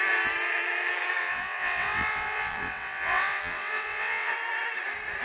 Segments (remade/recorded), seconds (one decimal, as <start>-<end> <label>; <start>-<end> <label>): 0.0-1.2 recorded; 1.2-4.3 remade; 4.3-5.2 recorded